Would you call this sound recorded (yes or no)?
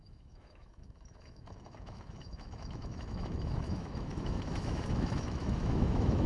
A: no